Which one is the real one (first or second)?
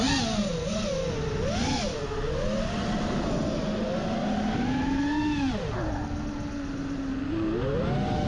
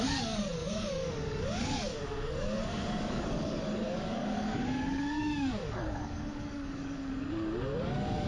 first